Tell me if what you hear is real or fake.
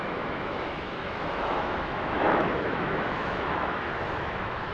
fake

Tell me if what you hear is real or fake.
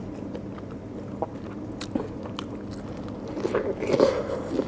real